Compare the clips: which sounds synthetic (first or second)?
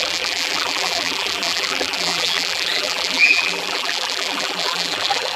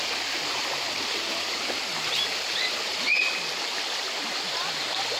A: first